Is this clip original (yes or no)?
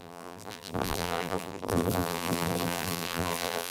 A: no